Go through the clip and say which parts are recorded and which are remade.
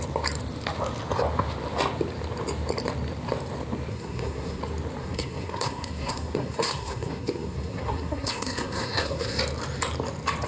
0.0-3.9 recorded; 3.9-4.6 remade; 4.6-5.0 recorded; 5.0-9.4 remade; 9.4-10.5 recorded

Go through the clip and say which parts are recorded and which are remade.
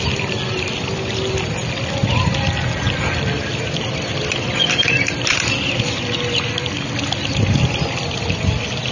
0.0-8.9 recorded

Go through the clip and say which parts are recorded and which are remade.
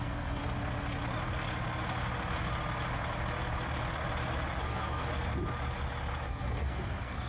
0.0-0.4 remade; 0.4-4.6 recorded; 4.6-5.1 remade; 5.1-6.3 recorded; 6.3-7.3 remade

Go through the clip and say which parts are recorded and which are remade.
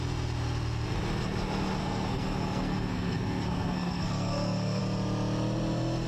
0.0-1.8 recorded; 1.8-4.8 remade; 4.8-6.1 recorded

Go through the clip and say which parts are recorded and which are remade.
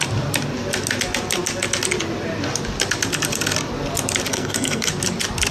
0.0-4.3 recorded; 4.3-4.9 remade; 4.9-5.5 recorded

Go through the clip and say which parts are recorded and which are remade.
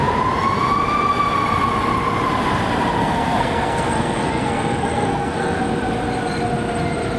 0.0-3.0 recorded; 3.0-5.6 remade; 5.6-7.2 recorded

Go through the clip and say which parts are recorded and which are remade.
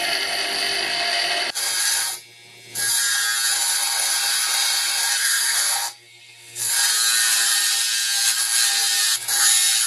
0.0-5.1 recorded; 5.1-6.7 remade; 6.7-9.9 recorded